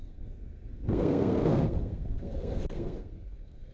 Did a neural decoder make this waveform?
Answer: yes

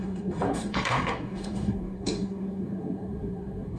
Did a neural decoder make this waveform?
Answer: yes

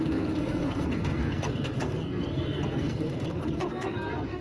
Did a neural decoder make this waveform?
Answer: yes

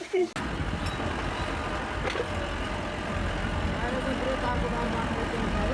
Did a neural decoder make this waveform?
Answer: no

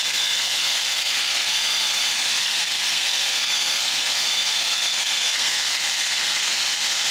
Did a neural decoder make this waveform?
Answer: yes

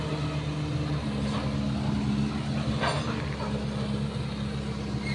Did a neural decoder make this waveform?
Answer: no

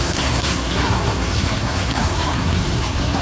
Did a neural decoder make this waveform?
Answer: yes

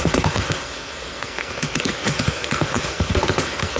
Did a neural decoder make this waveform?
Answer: yes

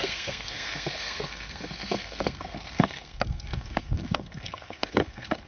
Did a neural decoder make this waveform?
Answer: yes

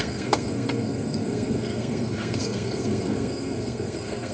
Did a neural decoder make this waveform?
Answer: yes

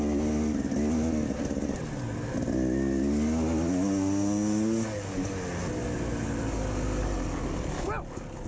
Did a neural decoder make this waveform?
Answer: no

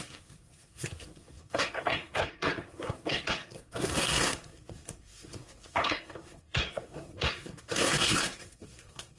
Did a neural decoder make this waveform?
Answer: yes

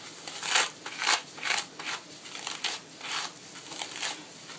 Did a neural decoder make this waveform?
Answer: no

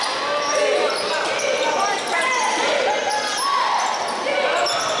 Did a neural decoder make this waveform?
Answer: no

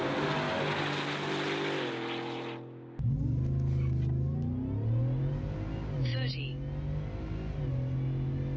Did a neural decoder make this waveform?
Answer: no